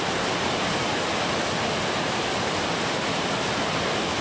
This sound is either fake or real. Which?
real